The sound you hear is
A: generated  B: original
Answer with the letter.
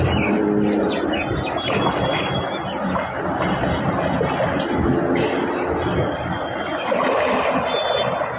B